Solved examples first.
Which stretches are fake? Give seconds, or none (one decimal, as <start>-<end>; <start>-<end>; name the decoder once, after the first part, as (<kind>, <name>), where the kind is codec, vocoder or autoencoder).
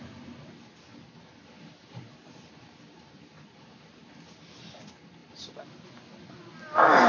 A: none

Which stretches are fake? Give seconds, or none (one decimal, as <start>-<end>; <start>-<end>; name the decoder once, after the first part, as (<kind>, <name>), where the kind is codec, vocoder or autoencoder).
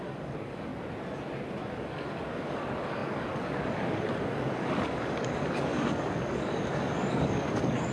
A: 0.0-0.7 (codec, DAC); 1.6-7.9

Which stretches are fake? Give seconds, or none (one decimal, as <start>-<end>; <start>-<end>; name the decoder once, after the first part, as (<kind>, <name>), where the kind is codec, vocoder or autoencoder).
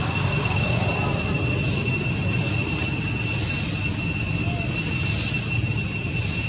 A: 0.0-0.8 (codec, DAC)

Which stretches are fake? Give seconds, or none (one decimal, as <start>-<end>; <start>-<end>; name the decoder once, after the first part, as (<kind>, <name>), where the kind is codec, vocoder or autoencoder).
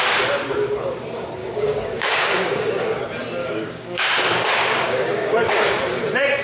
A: 1.4-3.0 (codec, DAC); 3.4-5.5